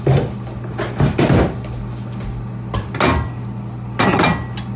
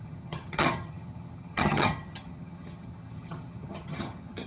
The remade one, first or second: second